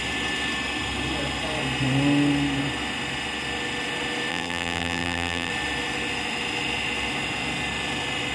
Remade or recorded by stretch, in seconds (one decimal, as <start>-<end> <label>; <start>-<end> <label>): 0.0-4.3 recorded; 4.3-5.5 remade; 5.5-8.3 recorded